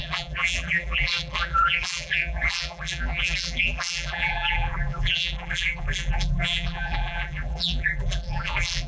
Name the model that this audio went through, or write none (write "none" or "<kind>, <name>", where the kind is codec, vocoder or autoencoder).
vocoder, BigVGAN v2